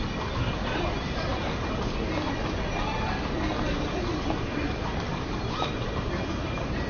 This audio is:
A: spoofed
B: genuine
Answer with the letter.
B